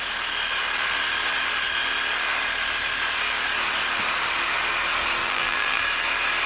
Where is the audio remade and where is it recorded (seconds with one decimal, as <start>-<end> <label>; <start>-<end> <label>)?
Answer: 0.0-5.2 recorded; 5.2-5.8 remade; 5.8-6.5 recorded